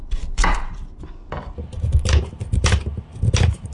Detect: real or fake fake